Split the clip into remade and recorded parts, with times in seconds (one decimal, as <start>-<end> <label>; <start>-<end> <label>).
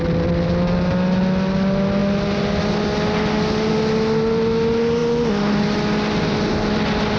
0.0-7.2 recorded